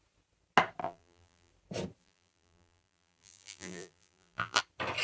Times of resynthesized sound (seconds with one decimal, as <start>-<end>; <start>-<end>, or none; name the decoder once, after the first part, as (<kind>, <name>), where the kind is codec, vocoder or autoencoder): 0.8-1.5 (vocoder, BigVGAN v2); 2.0-4.6